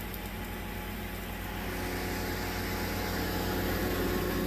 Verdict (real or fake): real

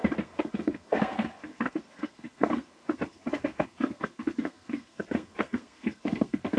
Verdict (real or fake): fake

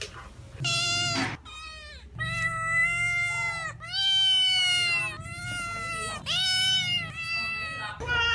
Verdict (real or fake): real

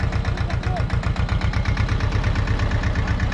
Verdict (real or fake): real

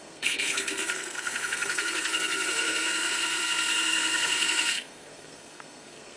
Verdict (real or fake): fake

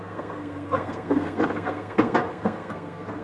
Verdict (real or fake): fake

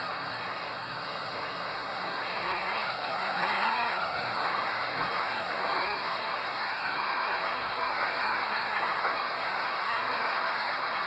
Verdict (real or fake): fake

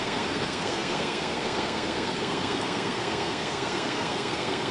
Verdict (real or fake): fake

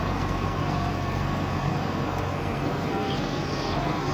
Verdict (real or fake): fake